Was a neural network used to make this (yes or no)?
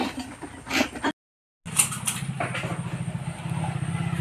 no